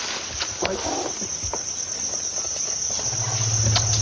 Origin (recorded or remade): recorded